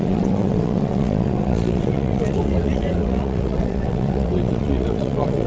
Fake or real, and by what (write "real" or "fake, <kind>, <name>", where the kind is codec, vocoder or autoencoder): fake, vocoder, WaveNeXt